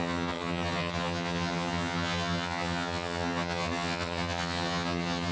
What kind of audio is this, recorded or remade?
remade